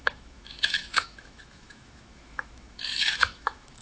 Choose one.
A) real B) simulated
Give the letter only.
B